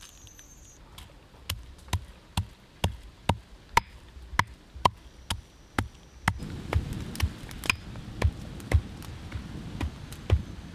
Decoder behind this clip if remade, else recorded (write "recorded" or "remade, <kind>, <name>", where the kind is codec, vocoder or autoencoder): recorded